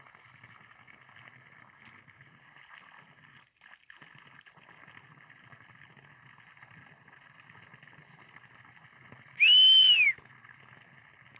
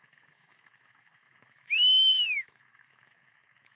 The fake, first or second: second